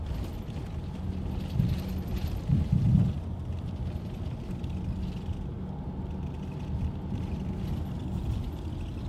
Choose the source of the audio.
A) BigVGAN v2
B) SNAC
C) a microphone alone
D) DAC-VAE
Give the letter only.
C